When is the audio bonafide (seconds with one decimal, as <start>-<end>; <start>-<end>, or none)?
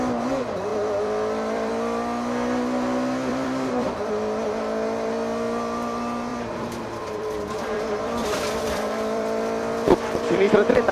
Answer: 0.0-0.7; 1.7-3.3; 4.1-6.3; 10.5-10.9